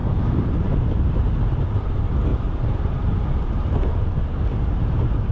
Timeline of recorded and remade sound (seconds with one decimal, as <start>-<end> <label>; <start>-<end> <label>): 0.0-1.5 remade; 1.5-2.3 recorded; 2.3-5.3 remade